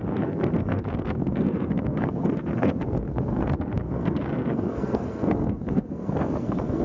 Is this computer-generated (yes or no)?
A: yes